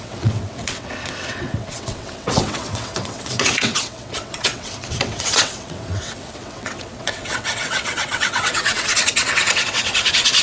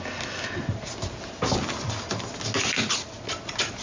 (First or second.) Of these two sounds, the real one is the second